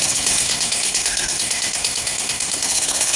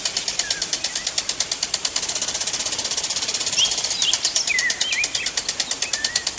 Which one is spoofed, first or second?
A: first